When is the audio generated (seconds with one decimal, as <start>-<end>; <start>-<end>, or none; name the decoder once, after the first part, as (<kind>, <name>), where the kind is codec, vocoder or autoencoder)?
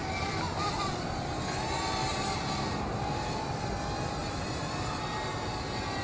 0.0-0.9 (vocoder, BigVGAN v2); 2.0-2.7; 4.2-4.9